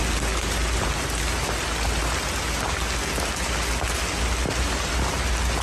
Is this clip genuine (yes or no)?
yes